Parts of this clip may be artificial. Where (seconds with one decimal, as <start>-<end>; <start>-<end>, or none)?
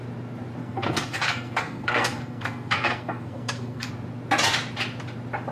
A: 0.6-3.9